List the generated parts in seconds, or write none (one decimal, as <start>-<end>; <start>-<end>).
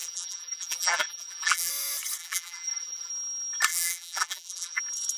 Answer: 0.0-1.7; 2.2-3.1; 3.7-4.8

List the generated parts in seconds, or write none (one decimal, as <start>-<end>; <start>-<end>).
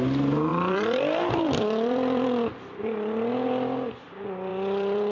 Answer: 0.5-2.7; 4.5-5.1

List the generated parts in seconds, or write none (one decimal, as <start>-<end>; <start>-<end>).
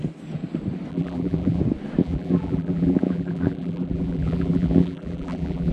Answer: 0.9-1.6; 2.0-5.7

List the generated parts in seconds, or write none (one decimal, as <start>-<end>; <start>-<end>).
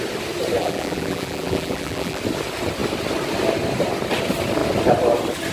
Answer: 0.6-2.2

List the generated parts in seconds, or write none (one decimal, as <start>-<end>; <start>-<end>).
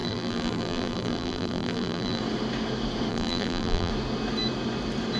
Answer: 0.0-2.2; 3.1-3.9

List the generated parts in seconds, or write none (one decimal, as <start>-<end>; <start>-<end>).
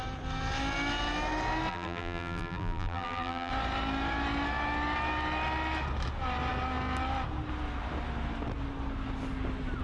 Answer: 1.7-3.5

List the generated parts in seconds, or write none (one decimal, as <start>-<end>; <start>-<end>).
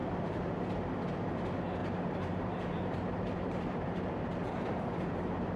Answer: 0.0-0.5; 1.8-5.6